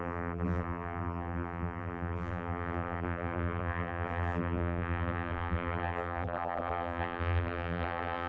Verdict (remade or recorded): remade